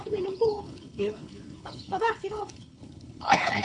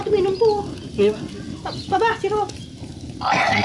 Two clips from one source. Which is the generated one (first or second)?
first